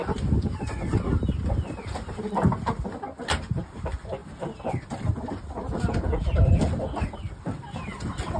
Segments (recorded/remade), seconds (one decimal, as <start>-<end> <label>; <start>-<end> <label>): 0.0-3.7 recorded; 3.7-8.4 remade